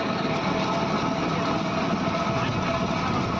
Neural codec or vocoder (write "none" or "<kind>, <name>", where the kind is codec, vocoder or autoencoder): none